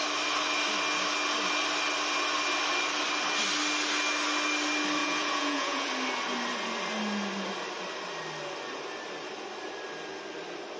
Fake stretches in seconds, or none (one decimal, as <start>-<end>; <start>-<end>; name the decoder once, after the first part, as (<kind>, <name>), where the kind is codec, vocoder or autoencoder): 5.0-5.9 (vocoder, Vocos)